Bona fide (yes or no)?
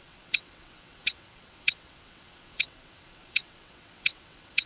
no